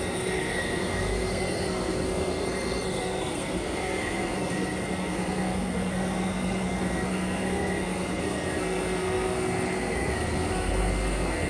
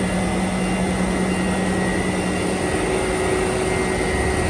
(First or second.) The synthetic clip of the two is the first